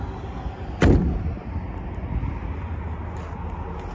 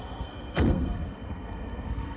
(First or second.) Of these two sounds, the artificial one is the second